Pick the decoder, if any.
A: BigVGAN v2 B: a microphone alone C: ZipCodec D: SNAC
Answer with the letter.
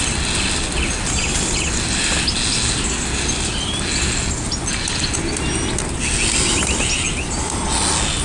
B